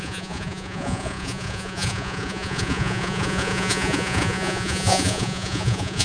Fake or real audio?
fake